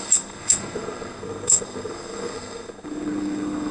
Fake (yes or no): yes